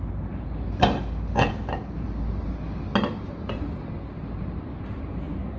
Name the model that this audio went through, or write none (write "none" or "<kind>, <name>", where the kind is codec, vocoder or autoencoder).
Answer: none